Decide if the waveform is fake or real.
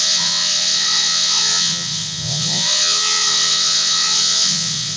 fake